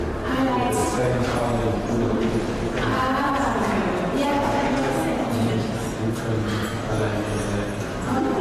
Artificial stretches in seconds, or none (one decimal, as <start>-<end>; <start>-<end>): 0.0-5.8; 8.0-8.4